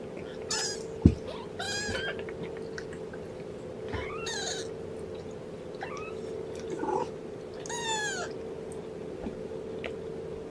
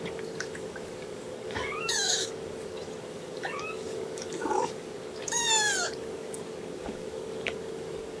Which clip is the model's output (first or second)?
second